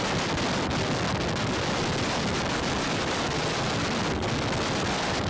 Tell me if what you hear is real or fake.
real